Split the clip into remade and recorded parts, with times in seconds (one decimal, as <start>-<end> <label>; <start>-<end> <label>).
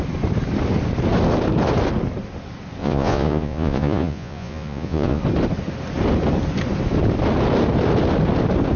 0.0-2.8 recorded; 2.8-5.2 remade; 5.2-8.8 recorded